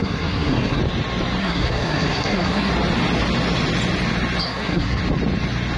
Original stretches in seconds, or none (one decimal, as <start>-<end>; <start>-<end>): 0.8-1.4; 2.7-4.4; 5.0-5.8